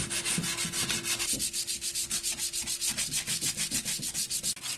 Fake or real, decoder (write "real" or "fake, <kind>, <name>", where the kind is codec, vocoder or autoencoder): real